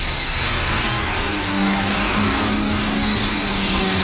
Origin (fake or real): fake